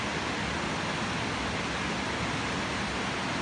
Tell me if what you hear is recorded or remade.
recorded